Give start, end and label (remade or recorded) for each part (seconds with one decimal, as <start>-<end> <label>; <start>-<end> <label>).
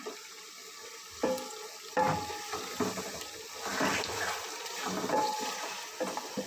0.0-6.5 recorded